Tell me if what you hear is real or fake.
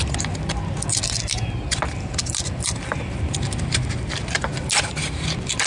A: real